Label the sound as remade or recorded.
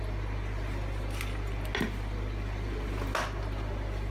recorded